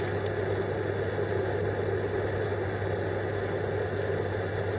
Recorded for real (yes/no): yes